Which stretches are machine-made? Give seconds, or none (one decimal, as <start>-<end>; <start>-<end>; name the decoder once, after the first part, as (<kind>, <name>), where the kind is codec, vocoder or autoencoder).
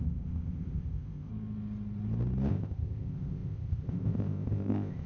0.0-1.3 (codec, ZipCodec); 2.5-5.1